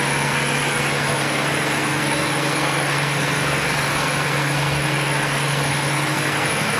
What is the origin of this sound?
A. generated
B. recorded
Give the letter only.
A